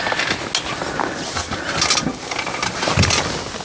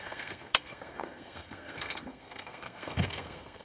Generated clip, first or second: second